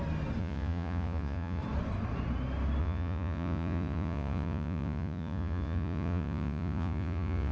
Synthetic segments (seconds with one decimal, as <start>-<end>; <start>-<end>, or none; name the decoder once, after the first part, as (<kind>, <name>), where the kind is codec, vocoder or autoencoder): 0.4-1.6 (vocoder, Vocos); 2.8-7.5